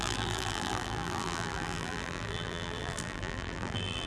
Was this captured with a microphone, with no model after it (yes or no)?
no